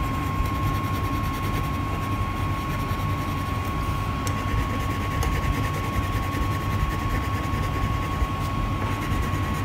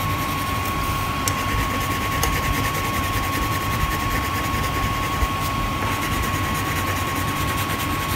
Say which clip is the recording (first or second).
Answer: first